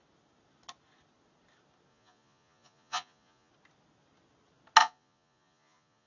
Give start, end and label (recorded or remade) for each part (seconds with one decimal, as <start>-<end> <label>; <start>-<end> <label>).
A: 0.0-1.9 recorded; 1.9-3.5 remade; 3.5-4.8 recorded; 4.8-6.1 remade